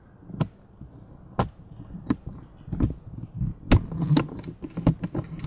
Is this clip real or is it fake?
real